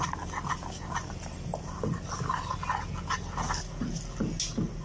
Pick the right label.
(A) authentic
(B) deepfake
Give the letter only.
A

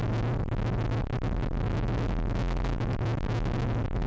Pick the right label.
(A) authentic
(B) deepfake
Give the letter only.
A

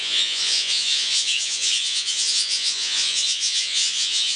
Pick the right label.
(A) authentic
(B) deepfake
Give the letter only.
B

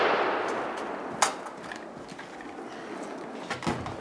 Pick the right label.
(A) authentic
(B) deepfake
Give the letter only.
A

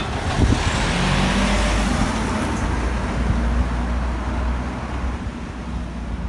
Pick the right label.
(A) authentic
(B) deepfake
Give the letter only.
A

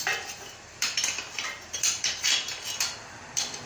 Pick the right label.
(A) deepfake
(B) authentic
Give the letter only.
A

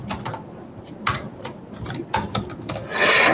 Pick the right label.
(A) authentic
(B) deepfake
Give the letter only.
A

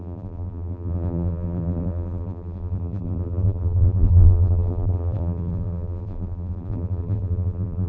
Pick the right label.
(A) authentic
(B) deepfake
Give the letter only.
B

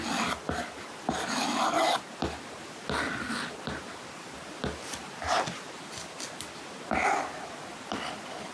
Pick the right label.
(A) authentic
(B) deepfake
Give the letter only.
A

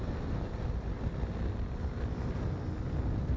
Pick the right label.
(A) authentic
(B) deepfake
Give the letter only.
A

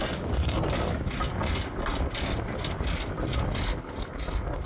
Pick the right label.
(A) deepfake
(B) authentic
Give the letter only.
B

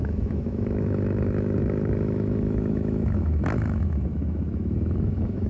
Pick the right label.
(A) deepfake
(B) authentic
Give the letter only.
A